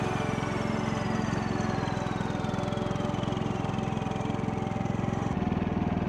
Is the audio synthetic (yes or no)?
no